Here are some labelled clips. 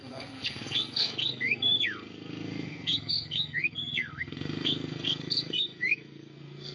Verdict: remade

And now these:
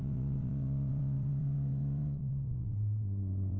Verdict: remade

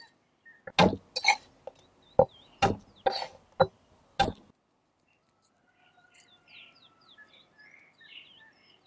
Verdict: recorded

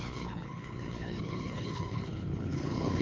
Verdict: remade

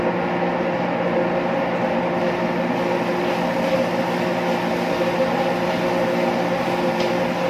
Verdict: recorded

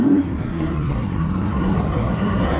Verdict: remade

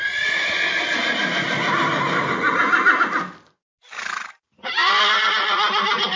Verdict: recorded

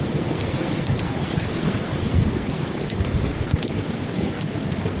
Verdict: remade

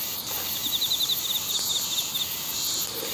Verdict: recorded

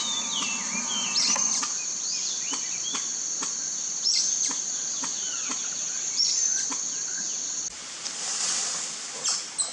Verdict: recorded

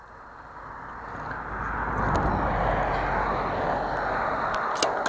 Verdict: recorded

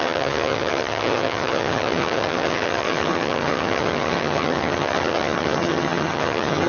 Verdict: remade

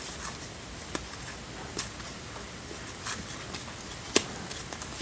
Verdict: recorded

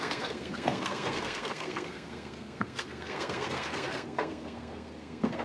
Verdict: remade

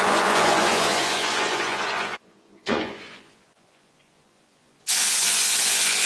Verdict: remade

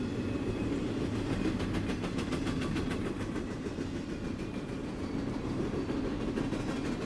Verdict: recorded